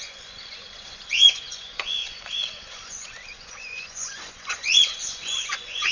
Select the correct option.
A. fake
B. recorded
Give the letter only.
A